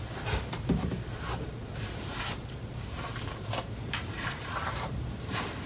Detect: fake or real fake